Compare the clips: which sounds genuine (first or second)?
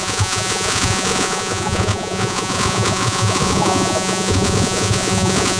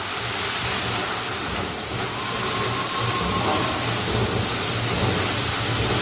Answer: second